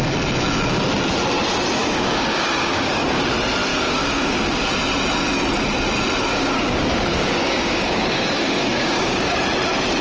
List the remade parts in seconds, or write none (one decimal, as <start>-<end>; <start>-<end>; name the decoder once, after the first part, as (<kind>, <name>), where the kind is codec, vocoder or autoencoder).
1.8-3.2 (codec, DAC); 3.7-4.7; 6.3-9.4